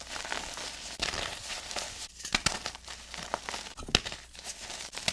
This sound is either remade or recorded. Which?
recorded